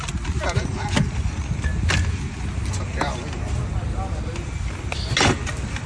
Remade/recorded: recorded